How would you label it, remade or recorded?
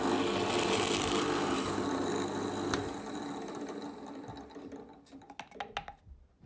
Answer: recorded